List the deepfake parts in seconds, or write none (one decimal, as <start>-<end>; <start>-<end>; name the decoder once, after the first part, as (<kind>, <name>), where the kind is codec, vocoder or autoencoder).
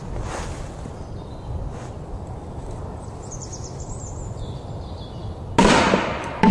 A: none